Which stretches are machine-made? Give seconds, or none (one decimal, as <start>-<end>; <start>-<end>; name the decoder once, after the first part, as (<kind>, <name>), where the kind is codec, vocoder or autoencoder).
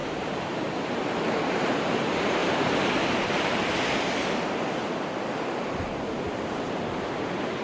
0.0-2.4 (vocoder, BigVGAN v2); 6.7-7.6